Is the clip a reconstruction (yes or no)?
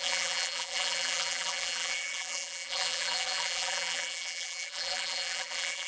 yes